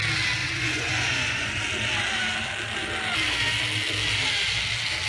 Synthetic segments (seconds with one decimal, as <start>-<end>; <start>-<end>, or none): 0.4-1.6